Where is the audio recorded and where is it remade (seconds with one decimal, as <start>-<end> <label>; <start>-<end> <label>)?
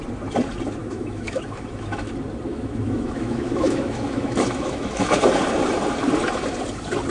0.0-0.8 recorded; 0.8-2.1 remade; 2.1-2.5 recorded; 2.5-5.2 remade; 5.2-7.1 recorded